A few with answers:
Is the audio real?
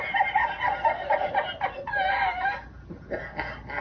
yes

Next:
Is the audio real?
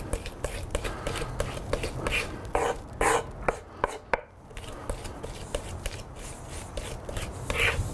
yes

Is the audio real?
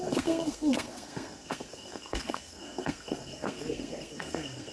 no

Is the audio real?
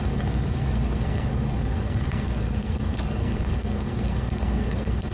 no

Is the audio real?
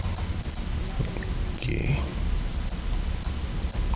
yes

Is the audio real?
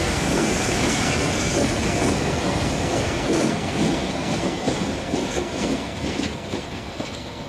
no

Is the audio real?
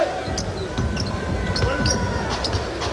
yes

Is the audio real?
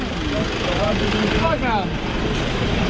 yes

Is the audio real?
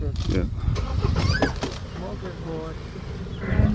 yes